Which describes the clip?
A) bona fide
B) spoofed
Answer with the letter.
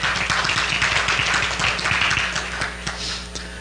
A